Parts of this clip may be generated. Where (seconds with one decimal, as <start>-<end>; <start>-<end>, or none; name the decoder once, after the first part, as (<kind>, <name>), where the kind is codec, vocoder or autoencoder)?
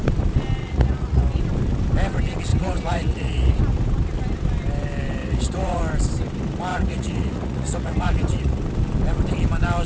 0.6-1.4 (vocoder, Vocos); 2.5-3.6; 5.2-5.8; 6.7-8.6